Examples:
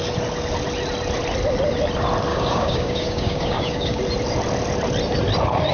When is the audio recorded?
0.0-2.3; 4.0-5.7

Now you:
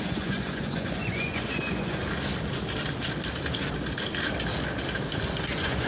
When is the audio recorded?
2.0-5.5

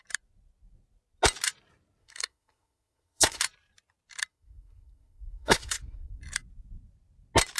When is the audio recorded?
0.0-2.0; 3.4-4.3; 6.2-7.6